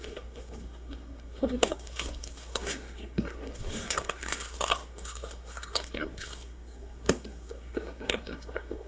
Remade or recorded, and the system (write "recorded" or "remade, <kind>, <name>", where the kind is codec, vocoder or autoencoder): remade, codec, SNAC